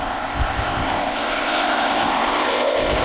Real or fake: fake